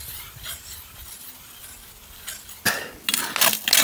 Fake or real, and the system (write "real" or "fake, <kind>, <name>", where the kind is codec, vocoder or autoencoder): real